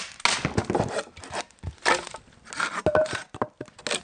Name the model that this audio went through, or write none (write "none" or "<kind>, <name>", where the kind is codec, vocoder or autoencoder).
none